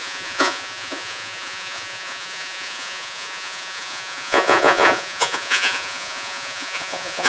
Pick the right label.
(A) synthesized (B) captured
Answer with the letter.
A